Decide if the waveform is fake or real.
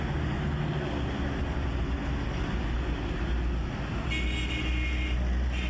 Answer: real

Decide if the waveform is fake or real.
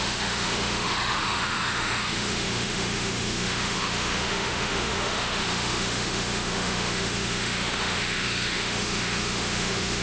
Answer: fake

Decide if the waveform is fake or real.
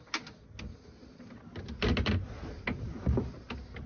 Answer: real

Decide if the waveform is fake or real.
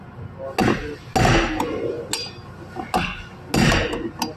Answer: real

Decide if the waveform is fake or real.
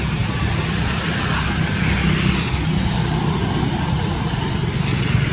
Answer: real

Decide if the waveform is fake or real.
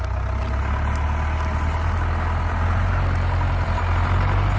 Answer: real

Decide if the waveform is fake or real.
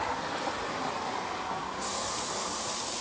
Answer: real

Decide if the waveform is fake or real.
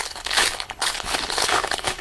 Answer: fake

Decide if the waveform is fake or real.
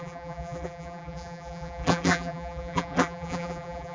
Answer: fake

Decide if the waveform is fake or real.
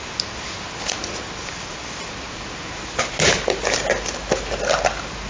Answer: real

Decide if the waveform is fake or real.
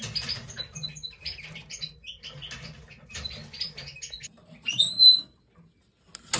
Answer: real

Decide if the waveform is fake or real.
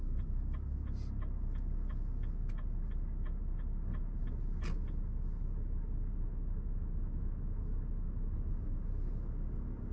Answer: real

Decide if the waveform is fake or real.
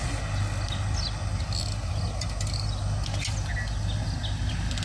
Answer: real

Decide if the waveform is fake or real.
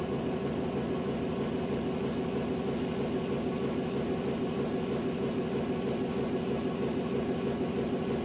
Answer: real